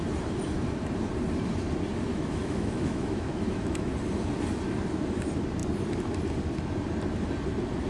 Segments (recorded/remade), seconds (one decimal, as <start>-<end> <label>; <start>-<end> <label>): 0.0-2.1 recorded; 2.1-3.9 remade; 3.9-7.9 recorded